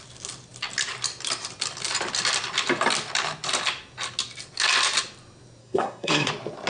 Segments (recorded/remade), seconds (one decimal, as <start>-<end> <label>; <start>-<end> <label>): 0.0-5.6 recorded; 5.6-6.3 remade; 6.3-6.7 recorded